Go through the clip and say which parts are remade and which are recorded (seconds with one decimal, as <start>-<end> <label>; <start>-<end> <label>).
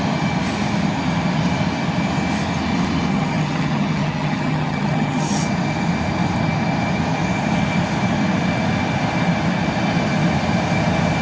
0.0-3.1 recorded; 3.1-5.4 remade; 5.4-11.2 recorded